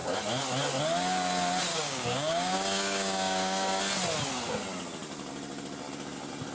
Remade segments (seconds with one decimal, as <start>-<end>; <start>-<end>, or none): 1.7-3.8